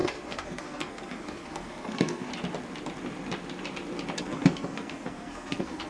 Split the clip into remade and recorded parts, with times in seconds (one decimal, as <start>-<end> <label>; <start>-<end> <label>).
0.0-2.3 remade; 2.3-4.2 recorded; 4.2-5.9 remade